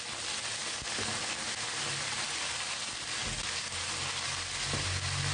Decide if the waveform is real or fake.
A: real